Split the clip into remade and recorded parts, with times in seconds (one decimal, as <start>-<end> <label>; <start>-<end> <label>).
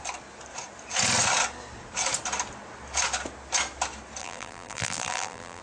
0.0-4.2 recorded; 4.2-5.6 remade